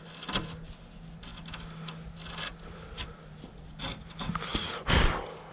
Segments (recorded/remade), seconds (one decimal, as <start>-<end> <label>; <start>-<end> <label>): 0.0-5.5 recorded